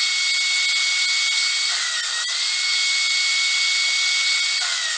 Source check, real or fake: real